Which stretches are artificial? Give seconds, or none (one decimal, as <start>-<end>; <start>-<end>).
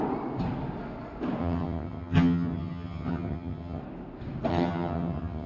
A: 1.4-3.8; 4.5-5.5